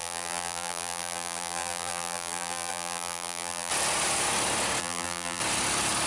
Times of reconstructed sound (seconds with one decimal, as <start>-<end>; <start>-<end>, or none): 0.0-3.7; 4.8-5.4